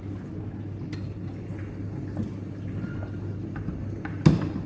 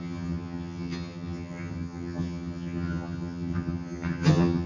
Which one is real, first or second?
first